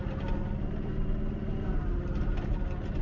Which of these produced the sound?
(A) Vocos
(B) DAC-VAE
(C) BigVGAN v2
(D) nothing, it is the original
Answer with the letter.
D